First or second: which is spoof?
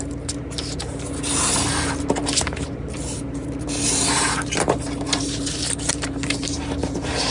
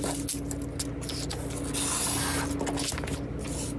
first